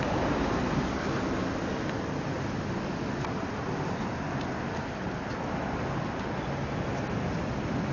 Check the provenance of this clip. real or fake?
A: real